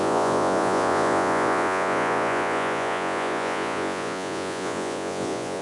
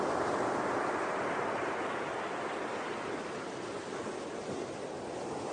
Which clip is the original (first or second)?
second